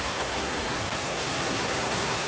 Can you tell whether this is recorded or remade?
remade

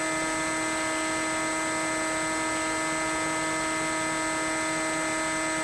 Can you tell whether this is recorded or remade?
recorded